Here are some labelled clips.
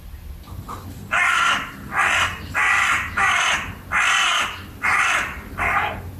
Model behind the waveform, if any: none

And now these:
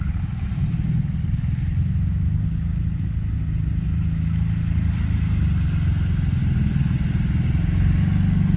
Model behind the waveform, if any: none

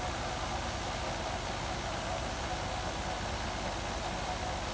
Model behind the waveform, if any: none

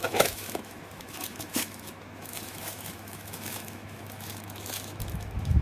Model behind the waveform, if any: autoencoder, DAC-VAE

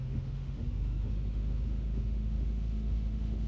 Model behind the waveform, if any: autoencoder, DAC-VAE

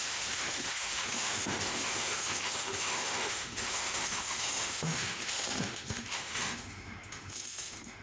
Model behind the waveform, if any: autoencoder, DAC-VAE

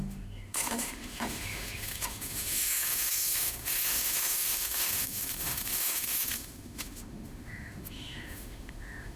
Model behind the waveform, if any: autoencoder, DAC-VAE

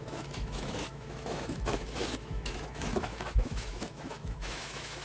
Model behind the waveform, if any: autoencoder, DAC-VAE